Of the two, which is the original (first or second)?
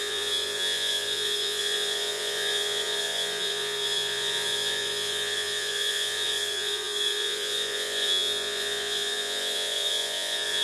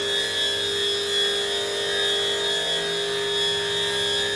second